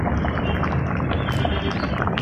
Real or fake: real